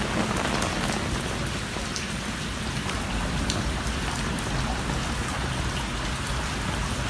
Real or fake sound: real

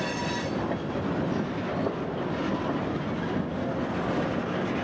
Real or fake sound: real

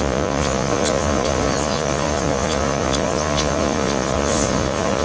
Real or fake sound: fake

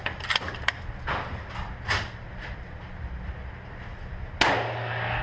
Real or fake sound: real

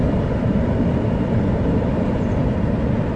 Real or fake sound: real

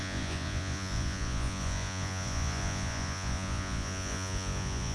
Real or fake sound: fake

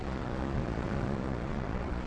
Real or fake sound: fake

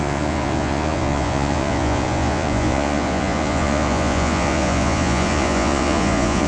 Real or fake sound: fake